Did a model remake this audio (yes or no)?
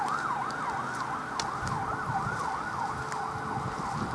no